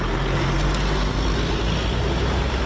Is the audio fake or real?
real